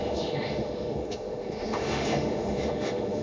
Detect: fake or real fake